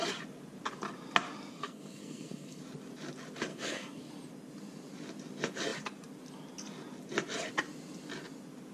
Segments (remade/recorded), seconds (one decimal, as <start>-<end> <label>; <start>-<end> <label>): 0.0-1.5 recorded; 1.5-2.6 remade; 2.6-3.5 recorded; 3.5-4.1 remade; 4.1-8.7 recorded